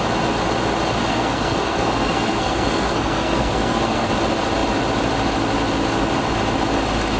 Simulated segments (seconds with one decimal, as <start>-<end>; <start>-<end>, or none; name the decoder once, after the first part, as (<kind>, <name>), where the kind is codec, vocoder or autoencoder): 1.1-4.1 (codec, SNAC)